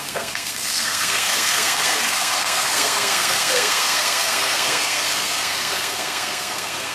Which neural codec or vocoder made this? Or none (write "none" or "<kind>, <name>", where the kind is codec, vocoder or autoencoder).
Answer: codec, SNAC